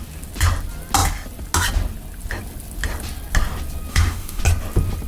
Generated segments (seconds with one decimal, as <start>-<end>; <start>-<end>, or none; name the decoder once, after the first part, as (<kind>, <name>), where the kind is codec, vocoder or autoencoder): 3.9-4.4 (autoencoder, DAC-VAE)